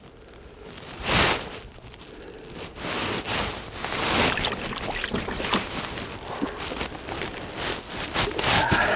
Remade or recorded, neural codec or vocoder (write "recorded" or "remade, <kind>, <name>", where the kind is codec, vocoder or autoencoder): recorded